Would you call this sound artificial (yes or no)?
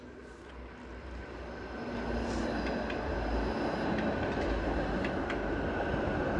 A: no